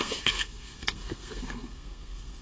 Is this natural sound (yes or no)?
no